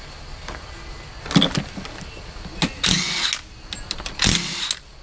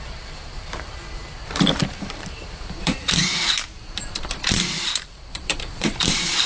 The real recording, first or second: first